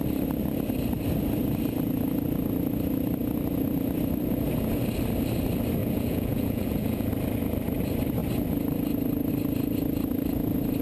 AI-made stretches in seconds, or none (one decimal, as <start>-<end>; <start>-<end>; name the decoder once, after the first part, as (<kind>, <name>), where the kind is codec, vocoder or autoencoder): 5.8-7.1 (vocoder, Vocos)